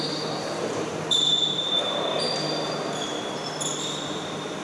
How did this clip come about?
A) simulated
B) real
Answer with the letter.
A